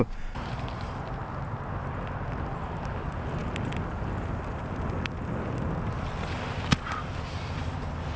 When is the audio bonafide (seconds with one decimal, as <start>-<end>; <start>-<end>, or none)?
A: 0.0-8.2